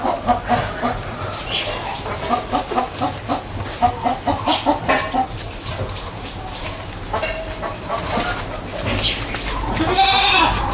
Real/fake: real